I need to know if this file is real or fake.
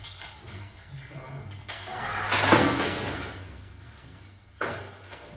fake